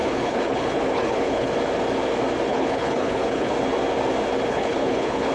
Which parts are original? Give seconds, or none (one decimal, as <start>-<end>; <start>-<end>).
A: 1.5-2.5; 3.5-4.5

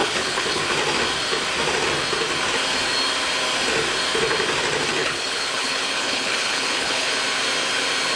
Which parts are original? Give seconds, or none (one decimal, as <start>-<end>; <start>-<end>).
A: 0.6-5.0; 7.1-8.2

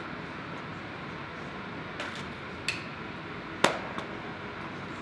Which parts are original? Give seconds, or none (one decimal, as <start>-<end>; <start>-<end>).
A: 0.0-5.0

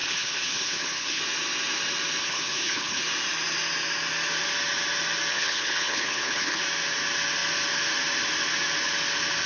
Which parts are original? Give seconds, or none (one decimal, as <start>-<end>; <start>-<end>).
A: 1.2-2.2; 3.0-5.3; 6.6-9.5

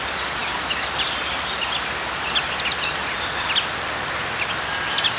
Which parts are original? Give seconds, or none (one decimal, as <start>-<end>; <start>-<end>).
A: 0.0-5.2